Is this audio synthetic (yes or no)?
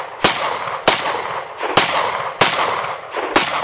no